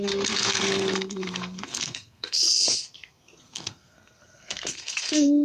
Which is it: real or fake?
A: fake